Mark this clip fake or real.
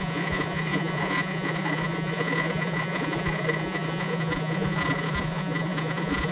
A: fake